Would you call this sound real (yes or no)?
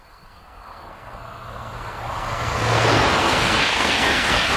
no